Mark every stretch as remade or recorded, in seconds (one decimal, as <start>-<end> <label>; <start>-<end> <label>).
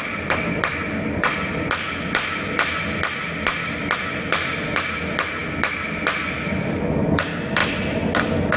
0.0-8.6 recorded